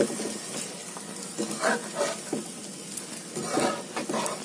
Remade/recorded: recorded